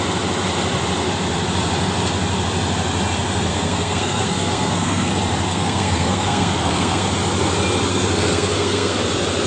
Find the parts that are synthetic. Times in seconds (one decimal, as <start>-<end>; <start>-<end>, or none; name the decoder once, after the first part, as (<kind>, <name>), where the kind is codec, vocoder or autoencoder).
3.5-5.1 (codec, SNAC); 5.5-7.1; 7.9-9.0